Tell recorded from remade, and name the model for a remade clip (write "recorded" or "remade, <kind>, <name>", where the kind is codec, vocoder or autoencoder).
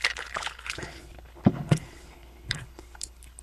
remade, codec, HILCodec